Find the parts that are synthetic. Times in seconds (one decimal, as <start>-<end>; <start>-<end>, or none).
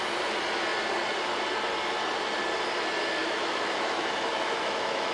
3.2-5.1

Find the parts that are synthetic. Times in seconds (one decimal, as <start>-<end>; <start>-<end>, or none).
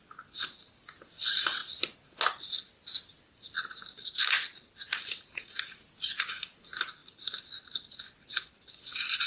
none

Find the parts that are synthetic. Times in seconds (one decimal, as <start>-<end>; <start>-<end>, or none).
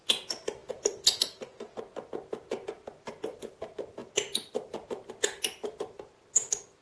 none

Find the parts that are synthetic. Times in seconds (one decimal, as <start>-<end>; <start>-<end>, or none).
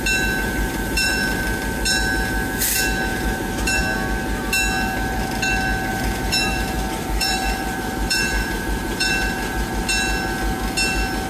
0.4-1.4; 3.1-3.8; 5.9-9.8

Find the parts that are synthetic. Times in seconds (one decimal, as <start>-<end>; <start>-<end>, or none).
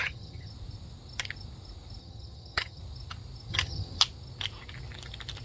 0.0-0.5; 2.0-2.8; 3.5-4.0